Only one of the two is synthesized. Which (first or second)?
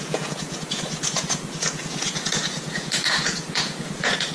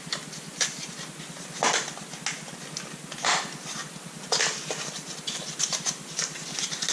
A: first